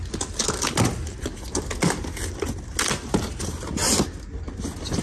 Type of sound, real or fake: real